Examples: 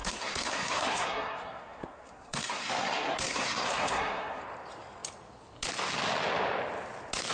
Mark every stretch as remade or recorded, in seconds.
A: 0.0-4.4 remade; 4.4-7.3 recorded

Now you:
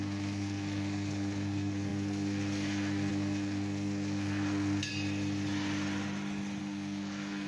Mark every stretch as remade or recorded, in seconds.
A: 0.0-4.9 remade; 4.9-6.6 recorded; 6.6-7.5 remade

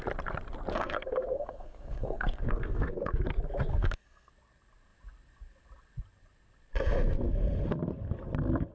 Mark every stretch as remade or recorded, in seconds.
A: 0.0-0.7 recorded; 0.7-3.1 remade; 3.1-3.7 recorded; 3.7-4.3 remade; 4.3-8.7 recorded

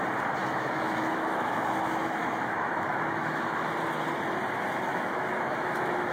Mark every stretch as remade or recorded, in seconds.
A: 0.0-0.4 recorded; 0.4-3.7 remade; 3.7-4.9 recorded; 4.9-6.1 remade